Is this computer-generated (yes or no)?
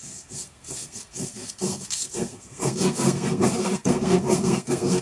yes